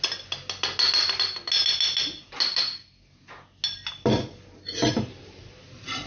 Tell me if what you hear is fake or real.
real